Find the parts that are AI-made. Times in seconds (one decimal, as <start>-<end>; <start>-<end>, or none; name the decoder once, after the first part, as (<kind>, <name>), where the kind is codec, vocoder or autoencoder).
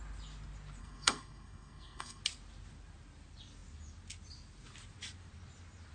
0.8-2.2 (codec, SNAC)